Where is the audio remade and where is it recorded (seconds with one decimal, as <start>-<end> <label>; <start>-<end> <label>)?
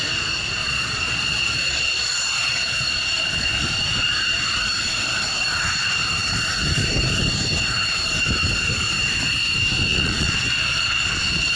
0.0-0.6 recorded; 0.6-3.6 remade; 3.6-9.9 recorded; 9.9-11.5 remade